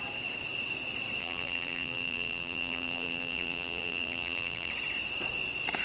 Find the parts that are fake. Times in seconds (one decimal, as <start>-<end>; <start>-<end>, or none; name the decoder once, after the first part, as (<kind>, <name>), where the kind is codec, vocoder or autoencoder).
1.2-4.7 (vocoder, BigVGAN v2)